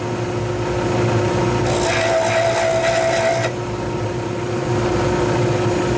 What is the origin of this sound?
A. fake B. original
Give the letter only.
B